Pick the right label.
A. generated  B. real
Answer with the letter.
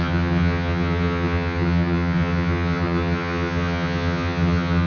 A